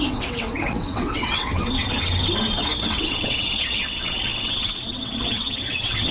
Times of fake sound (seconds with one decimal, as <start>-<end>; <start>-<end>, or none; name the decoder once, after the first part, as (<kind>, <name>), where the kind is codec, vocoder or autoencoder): 0.0-1.8 (vocoder, WaveNeXt); 2.8-6.1